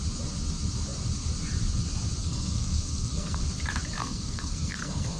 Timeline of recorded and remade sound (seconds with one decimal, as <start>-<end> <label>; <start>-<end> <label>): 0.0-2.2 recorded; 2.2-3.4 remade; 3.4-4.0 recorded; 4.0-5.2 remade